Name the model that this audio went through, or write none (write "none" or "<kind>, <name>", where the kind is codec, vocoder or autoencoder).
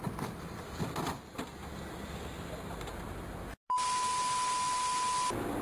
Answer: none